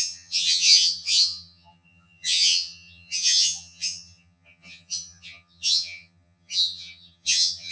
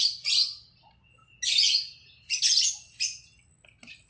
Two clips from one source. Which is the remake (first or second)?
first